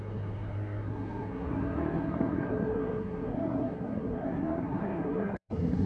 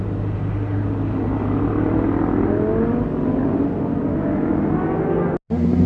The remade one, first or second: first